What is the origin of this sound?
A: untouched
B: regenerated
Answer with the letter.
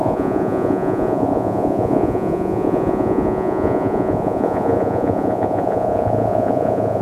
B